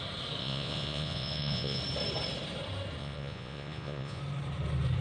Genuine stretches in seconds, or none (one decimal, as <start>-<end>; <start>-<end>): 0.0-0.4; 1.8-3.0; 4.2-5.0